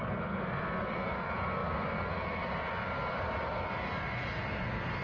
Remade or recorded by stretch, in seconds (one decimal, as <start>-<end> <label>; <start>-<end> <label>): 0.0-0.9 recorded; 0.9-5.0 remade

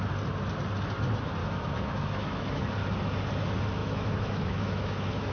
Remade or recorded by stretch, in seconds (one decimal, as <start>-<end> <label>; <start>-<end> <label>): 0.0-1.4 recorded; 1.4-2.7 remade; 2.7-3.8 recorded; 3.8-5.3 remade

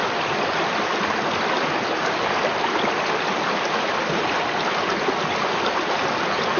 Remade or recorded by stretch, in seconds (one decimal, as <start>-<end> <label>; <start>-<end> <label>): 0.0-6.6 recorded

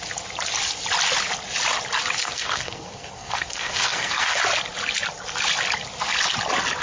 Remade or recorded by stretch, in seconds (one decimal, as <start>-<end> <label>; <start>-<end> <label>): 0.0-2.2 recorded; 2.2-4.4 remade; 4.4-6.8 recorded

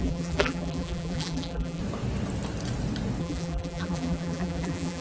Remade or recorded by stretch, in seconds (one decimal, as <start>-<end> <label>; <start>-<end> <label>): 0.0-1.8 remade; 1.8-3.2 recorded; 3.2-5.0 remade